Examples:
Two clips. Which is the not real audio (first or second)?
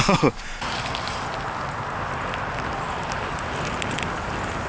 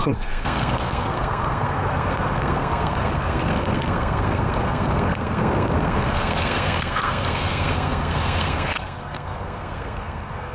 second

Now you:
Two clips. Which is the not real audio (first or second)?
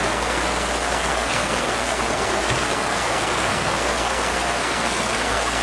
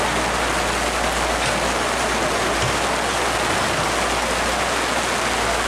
first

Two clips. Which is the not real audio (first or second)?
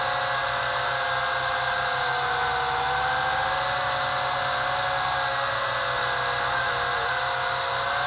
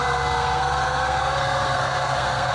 second